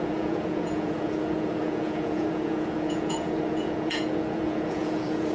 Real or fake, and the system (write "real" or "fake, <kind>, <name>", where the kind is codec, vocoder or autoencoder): fake, vocoder, Vocos